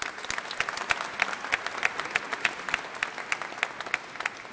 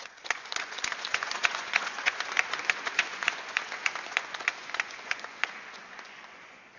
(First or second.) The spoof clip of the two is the second